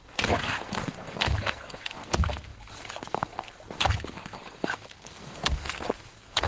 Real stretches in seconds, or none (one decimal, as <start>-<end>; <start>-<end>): none